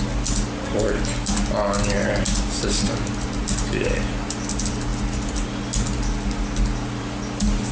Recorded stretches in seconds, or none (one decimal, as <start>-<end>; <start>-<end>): 0.0-7.7